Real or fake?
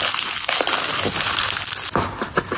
real